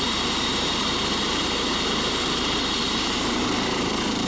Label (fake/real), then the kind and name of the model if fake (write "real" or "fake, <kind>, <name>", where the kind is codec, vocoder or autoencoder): fake, vocoder, BigVGAN v2